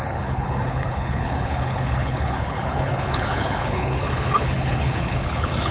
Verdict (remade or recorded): remade